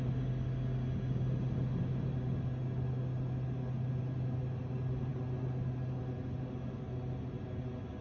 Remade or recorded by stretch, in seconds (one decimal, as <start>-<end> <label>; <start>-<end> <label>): 0.0-8.0 recorded